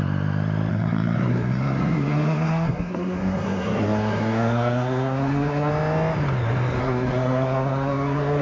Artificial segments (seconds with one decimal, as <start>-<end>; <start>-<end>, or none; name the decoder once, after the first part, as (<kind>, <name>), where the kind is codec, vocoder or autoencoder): 0.7-5.7 (codec, SNAC); 6.8-8.4